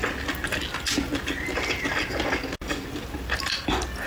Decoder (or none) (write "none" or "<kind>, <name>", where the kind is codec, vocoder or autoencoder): none